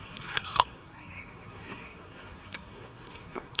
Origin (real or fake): fake